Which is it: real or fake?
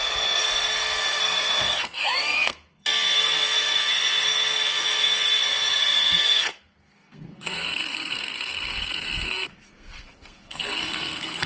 fake